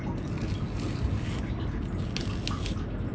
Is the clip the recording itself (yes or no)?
yes